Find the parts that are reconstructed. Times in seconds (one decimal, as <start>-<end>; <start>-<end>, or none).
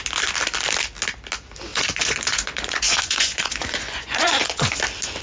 1.7-4.8